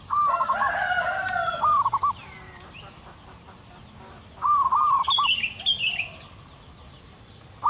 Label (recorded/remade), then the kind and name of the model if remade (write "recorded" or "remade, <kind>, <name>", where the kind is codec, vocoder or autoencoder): recorded